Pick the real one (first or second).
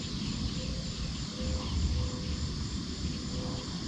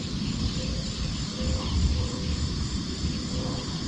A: first